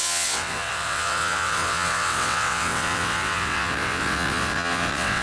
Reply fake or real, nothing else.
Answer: fake